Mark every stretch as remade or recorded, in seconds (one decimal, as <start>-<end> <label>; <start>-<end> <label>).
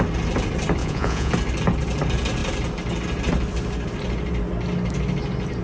0.0-0.8 recorded; 0.8-1.3 remade; 1.3-5.6 recorded